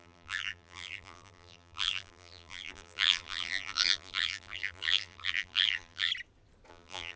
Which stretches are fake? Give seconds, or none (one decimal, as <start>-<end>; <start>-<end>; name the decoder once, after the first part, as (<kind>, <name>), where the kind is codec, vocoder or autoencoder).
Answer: 0.0-6.1 (vocoder, BigVGAN v2); 6.7-7.2